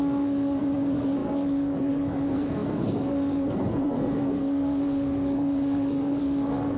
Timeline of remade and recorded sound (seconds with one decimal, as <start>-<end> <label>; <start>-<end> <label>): 0.0-6.8 remade